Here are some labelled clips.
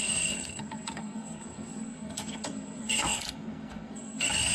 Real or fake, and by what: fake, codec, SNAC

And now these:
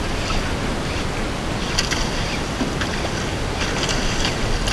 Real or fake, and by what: real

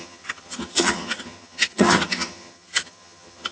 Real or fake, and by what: fake, vocoder, HiFi-GAN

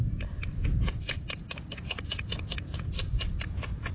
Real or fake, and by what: real